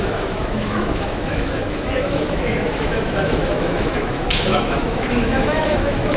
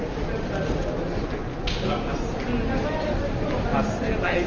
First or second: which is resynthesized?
first